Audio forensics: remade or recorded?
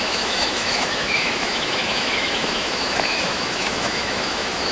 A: remade